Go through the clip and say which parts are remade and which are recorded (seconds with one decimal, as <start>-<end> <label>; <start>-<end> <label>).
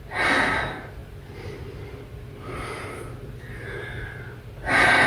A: 0.0-5.1 recorded